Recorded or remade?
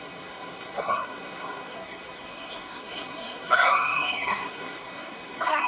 remade